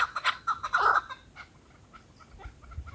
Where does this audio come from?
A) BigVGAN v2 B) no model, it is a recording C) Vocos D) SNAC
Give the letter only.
B